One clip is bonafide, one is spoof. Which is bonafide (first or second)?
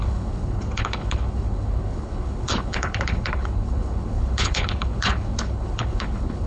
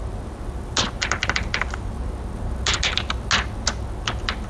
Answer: second